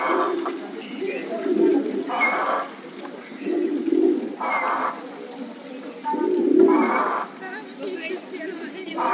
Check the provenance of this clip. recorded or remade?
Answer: recorded